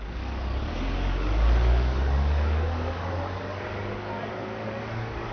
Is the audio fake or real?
fake